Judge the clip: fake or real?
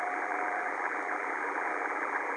fake